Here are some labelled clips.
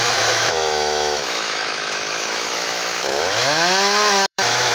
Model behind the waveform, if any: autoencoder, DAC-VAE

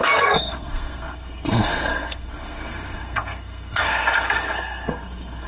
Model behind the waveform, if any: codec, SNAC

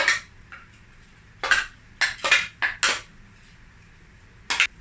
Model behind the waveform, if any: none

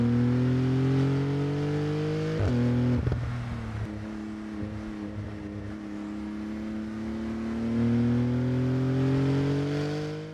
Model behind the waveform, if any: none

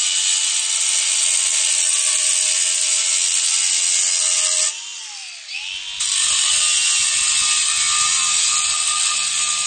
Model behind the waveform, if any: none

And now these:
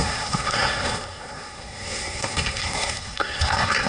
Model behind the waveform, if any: codec, SNAC